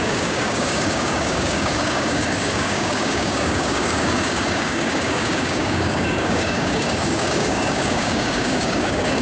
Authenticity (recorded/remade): remade